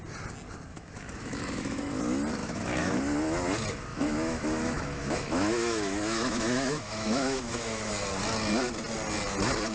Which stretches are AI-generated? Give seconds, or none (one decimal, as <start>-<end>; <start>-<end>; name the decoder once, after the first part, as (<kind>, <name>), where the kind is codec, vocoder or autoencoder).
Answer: 0.7-2.0 (autoencoder, DAC-VAE); 2.4-3.0; 3.9-7.9